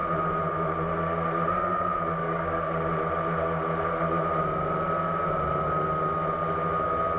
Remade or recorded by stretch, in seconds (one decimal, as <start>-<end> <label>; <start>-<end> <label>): 0.0-2.2 recorded; 2.2-2.8 remade; 2.8-7.2 recorded